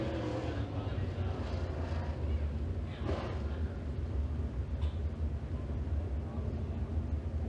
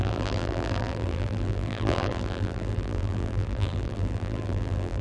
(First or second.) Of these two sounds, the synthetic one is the second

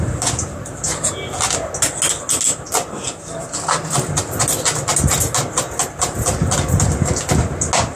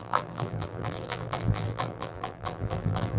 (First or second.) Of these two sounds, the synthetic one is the second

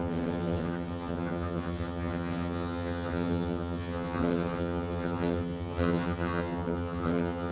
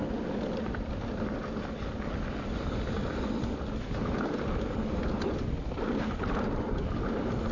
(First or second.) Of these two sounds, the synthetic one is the first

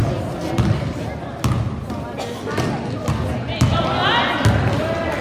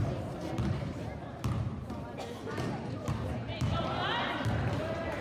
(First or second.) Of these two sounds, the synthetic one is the second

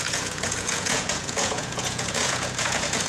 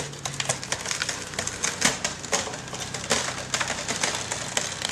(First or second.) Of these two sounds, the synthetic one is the first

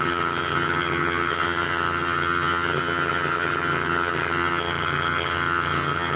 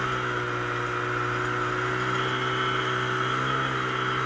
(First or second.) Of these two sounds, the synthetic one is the first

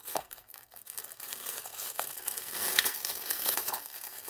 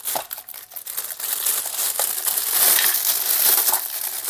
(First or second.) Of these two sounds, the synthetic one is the first